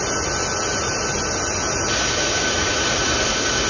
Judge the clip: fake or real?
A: real